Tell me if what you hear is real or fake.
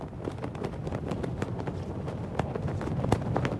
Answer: fake